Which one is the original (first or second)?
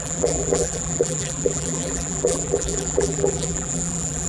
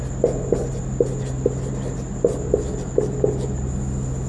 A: second